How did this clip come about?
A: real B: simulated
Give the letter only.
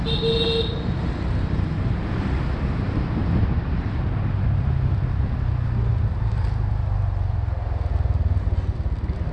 A